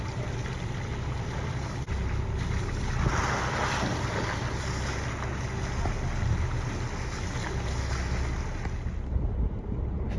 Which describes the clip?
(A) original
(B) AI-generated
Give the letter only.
A